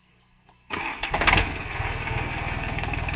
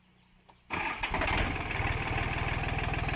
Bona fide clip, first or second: second